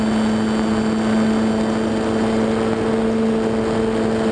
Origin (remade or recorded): recorded